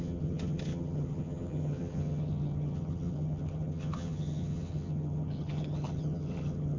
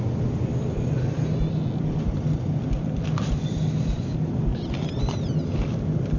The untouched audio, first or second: second